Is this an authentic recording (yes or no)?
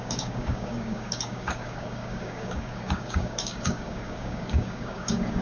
no